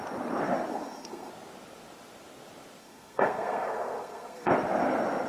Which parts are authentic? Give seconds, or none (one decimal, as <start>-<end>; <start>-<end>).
0.0-0.7; 1.3-2.8; 4.5-5.3